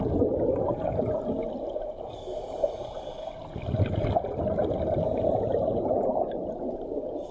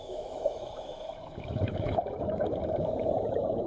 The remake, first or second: second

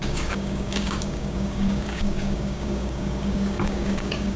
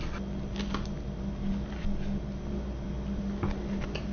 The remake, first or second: first